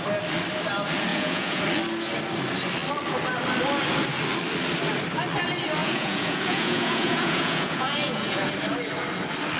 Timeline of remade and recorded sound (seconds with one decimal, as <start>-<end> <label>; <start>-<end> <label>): 0.0-1.1 recorded; 1.1-1.6 remade; 1.6-5.8 recorded; 5.8-8.5 remade; 8.5-9.6 recorded